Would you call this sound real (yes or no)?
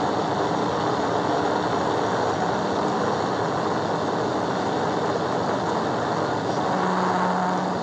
yes